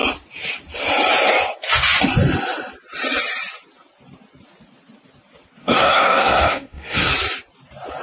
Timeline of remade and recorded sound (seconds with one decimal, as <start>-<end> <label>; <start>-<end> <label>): 0.0-5.6 recorded; 5.6-7.1 remade; 7.1-8.0 recorded